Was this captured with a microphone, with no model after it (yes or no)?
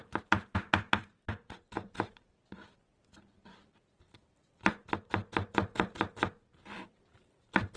yes